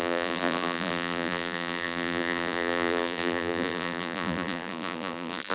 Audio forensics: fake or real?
fake